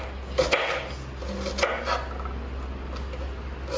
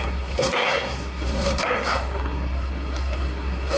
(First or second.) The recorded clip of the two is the first